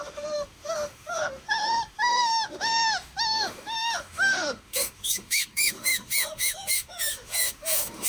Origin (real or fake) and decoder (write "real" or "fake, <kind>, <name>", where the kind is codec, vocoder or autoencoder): fake, autoencoder, DAC-VAE